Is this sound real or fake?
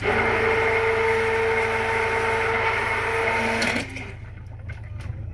real